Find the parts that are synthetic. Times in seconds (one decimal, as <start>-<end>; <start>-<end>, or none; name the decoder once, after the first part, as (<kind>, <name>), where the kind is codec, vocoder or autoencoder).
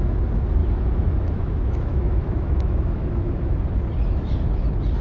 0.6-3.6 (autoencoder, DAC-VAE)